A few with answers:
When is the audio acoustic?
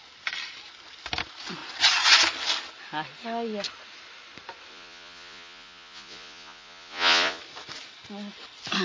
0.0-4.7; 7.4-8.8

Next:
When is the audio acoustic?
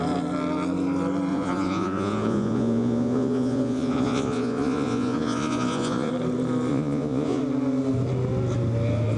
0.0-1.3; 6.1-6.7; 7.4-9.2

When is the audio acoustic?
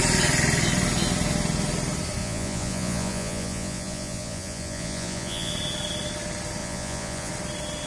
0.0-2.2; 5.5-6.6; 7.3-7.9